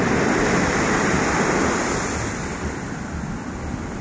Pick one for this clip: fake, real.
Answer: real